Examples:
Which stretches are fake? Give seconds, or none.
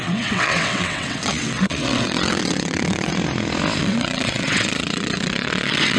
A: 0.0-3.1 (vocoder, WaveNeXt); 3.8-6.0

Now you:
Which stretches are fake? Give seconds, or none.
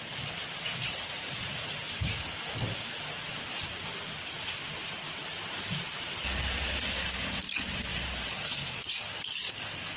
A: 0.7-2.5 (vocoder, BigVGAN v2); 7.9-9.0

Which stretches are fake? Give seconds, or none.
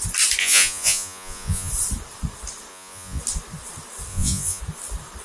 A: 0.4-1.7 (vocoder, Vocos); 2.7-3.2; 4.1-4.6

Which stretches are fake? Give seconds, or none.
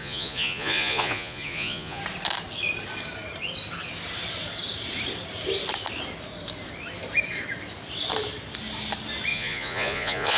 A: 0.0-2.0 (vocoder, Vocos); 9.3-10.4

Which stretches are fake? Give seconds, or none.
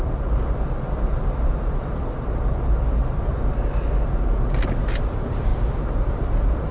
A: 0.0-3.3 (vocoder, BigVGAN v2); 4.6-6.7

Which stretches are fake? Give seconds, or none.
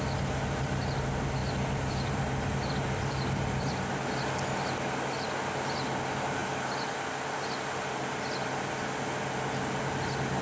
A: none